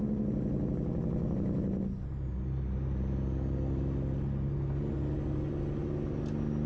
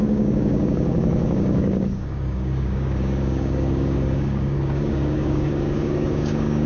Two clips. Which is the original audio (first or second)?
first